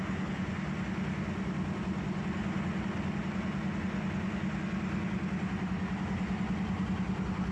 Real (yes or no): yes